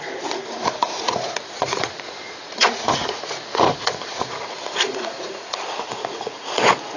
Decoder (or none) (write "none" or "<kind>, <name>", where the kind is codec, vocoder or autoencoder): vocoder, Vocos